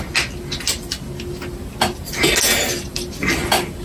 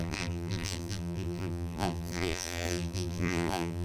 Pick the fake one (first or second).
second